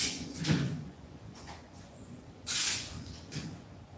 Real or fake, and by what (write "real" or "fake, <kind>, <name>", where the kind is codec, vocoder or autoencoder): fake, vocoder, Vocos